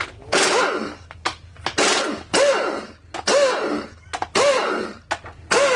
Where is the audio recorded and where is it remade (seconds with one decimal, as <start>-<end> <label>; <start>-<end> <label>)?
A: 0.0-5.8 recorded